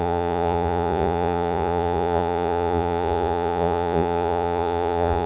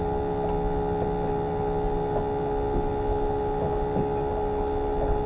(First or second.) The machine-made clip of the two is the first